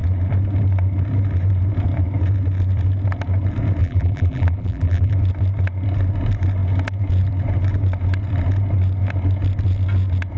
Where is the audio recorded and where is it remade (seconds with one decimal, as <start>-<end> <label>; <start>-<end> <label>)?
0.0-3.8 recorded; 3.8-5.1 remade; 5.1-10.4 recorded